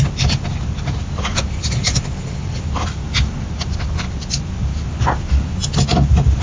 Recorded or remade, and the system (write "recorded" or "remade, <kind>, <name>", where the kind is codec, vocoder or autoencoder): recorded